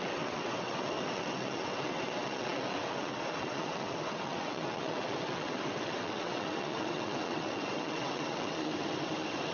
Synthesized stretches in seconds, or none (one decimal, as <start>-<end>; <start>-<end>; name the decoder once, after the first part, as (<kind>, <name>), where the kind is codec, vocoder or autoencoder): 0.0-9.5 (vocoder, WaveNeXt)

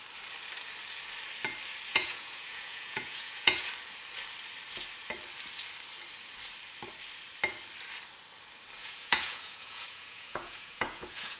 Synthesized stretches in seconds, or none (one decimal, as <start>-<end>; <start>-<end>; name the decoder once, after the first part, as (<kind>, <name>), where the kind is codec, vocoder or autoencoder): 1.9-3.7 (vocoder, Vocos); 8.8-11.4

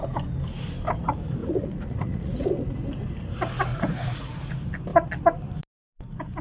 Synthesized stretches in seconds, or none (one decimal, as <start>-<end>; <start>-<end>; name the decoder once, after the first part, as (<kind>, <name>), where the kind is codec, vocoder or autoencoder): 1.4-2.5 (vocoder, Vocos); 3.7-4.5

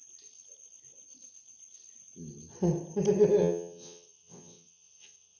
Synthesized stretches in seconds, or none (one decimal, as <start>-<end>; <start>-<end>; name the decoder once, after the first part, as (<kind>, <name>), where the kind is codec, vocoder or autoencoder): 3.4-5.4 (vocoder, WaveNeXt)

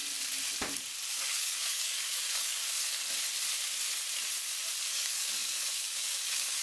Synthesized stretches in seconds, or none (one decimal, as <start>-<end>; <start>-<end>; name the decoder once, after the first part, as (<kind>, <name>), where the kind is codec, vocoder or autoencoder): 1.1-2.6 (codec, DAC); 4.9-6.6